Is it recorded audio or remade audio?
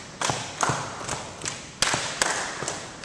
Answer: recorded